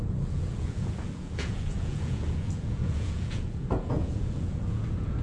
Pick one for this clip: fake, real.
fake